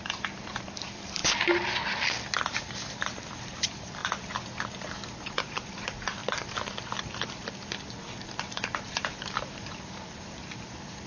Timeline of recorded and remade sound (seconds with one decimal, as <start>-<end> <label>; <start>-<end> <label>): 0.0-1.2 remade; 1.2-3.3 recorded; 3.3-4.0 remade; 4.0-5.3 recorded; 5.3-6.2 remade; 6.2-8.5 recorded; 8.5-11.1 remade